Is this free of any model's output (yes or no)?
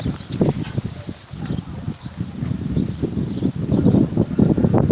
yes